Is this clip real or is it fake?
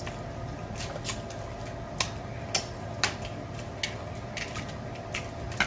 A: real